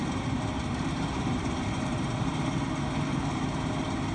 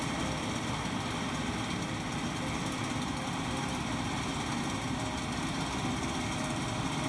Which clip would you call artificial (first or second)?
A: first